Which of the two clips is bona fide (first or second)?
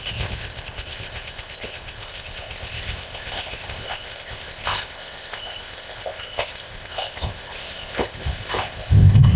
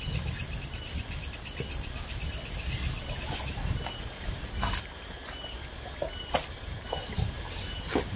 second